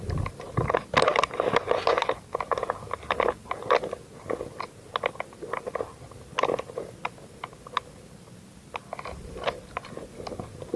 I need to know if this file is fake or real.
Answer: real